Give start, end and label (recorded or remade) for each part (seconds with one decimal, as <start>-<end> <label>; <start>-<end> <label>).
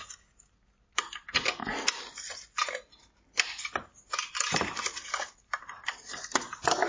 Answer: 0.0-6.9 recorded